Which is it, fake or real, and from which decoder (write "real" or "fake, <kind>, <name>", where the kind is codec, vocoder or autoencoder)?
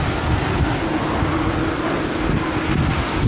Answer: real